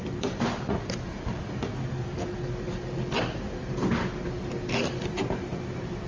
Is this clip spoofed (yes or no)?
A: no